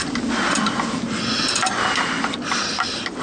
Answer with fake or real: real